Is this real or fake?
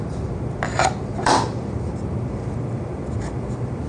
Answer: fake